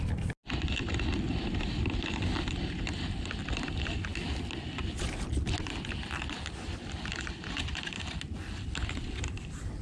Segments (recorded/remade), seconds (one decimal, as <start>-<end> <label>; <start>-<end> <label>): 0.0-9.8 recorded